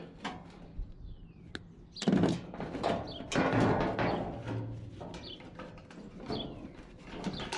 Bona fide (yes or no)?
yes